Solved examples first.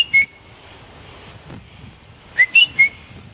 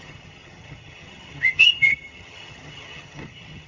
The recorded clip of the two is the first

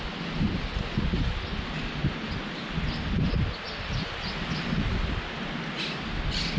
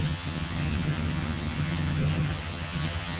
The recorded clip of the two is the first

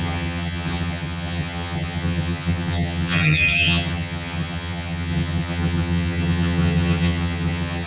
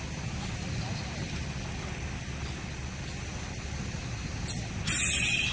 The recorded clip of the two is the second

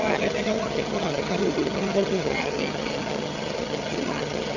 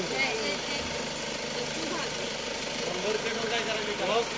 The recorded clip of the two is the second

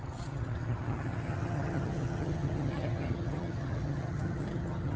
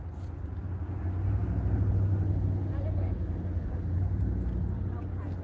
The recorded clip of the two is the second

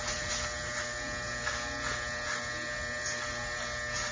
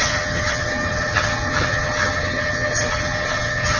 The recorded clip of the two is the first